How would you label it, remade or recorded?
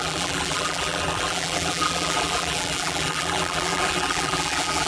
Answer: remade